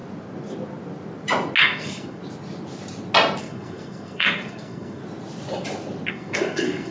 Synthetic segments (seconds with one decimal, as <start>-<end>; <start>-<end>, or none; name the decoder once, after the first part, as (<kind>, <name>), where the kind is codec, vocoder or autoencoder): 1.6-2.2 (codec, SNAC); 3.4-5.0; 6.1-6.9